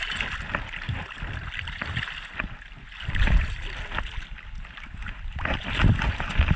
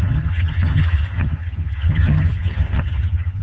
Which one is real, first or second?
first